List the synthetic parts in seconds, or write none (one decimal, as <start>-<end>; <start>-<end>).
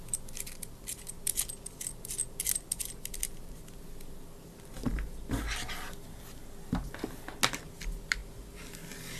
none